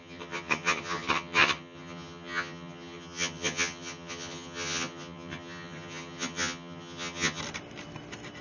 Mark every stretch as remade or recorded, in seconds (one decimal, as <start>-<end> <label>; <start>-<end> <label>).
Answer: 0.0-7.4 remade; 7.4-8.4 recorded